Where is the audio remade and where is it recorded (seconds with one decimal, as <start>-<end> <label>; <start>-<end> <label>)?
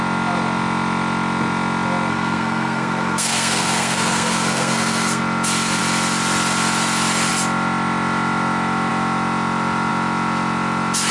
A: 0.0-2.1 recorded; 2.1-5.2 remade; 5.2-11.1 recorded